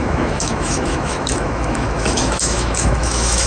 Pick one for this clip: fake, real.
fake